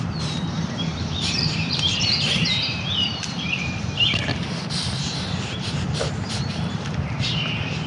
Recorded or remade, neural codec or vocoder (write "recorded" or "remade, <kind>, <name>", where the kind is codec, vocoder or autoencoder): remade, vocoder, BigVGAN v2